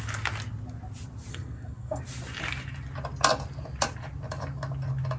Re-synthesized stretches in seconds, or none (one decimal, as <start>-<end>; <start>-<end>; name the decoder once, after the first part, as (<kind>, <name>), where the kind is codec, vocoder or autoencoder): 1.3-2.0 (codec, SNAC)